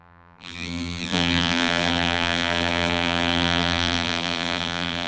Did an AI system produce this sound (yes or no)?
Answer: yes